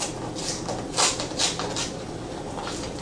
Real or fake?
real